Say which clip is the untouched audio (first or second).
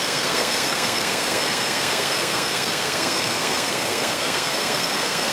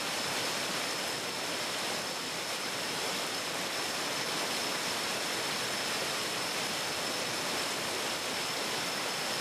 second